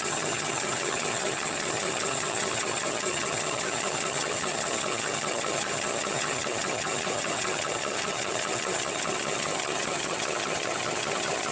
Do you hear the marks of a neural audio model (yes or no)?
yes